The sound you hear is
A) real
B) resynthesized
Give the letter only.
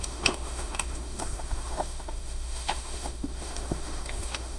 B